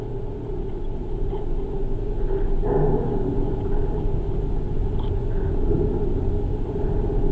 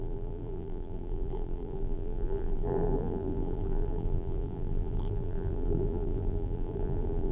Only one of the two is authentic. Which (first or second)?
first